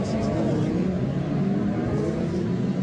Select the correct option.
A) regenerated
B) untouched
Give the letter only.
B